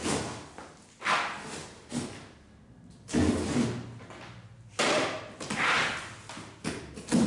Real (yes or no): yes